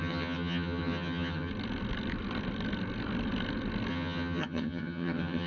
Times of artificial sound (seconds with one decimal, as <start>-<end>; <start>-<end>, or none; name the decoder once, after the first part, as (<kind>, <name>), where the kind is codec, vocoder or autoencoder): 0.0-1.5 (vocoder, HiFi-GAN); 3.9-5.5